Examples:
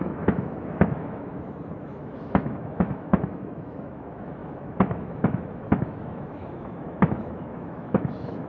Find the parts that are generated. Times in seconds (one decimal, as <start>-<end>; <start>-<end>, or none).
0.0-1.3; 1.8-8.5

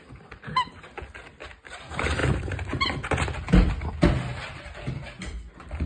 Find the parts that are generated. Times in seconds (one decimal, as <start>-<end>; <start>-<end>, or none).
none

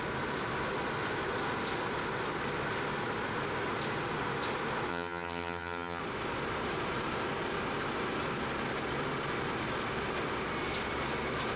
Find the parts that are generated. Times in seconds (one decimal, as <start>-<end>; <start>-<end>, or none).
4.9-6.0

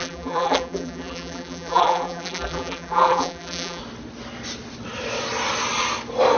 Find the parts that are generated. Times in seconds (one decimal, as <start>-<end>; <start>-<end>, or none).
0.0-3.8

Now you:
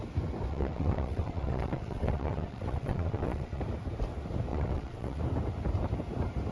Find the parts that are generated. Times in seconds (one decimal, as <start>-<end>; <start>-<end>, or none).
0.5-3.6; 4.5-5.2